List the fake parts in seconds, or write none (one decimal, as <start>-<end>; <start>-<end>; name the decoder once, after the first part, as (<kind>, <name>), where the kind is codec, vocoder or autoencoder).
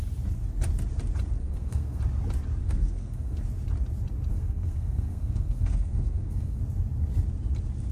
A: 1.4-2.0 (codec, SNAC); 2.6-3.4; 4.3-6.6